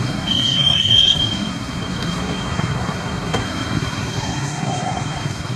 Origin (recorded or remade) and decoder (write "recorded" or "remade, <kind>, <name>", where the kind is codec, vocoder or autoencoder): remade, codec, SNAC